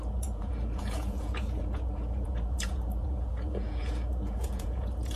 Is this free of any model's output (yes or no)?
no